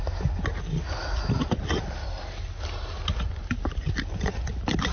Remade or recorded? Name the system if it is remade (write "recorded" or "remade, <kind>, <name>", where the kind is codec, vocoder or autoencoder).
recorded